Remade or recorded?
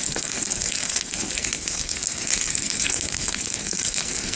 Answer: remade